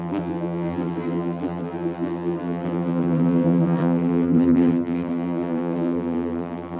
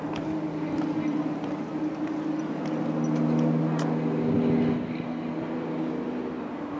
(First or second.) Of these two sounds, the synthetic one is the first